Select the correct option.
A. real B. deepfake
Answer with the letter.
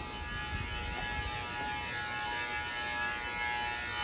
A